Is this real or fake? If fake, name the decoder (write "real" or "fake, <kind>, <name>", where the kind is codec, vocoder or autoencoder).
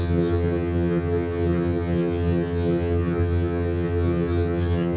fake, vocoder, HiFi-GAN